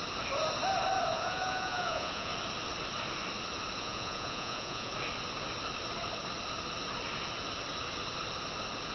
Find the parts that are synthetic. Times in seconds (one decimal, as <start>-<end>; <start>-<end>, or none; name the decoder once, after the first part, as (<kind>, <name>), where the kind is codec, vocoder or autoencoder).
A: 1.1-2.3 (vocoder, Vocos); 3.8-4.9